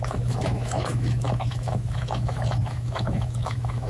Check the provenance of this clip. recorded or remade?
remade